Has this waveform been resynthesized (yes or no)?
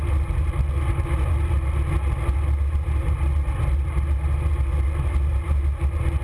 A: no